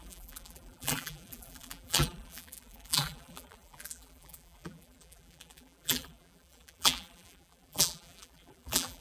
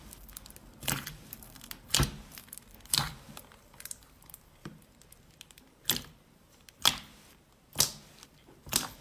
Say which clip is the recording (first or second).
second